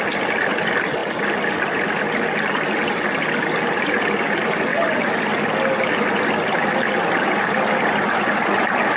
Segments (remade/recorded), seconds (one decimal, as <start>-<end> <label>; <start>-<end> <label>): 0.0-9.0 recorded